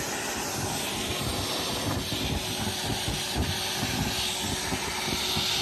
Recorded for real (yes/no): yes